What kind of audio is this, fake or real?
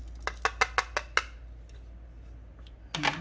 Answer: real